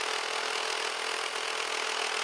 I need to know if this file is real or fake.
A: real